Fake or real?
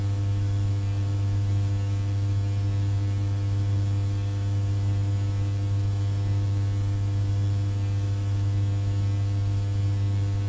fake